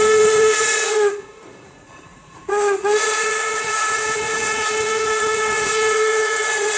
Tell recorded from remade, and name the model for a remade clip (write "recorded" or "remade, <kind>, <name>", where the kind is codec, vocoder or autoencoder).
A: remade, vocoder, Vocos